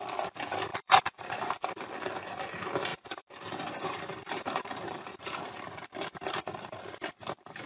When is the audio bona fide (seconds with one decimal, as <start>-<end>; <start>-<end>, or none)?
0.0-0.7; 1.9-2.9; 5.4-7.7